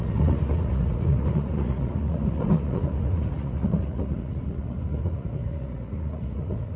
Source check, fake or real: fake